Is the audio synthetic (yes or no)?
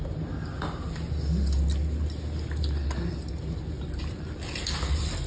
no